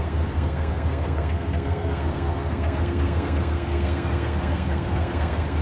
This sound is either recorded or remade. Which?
remade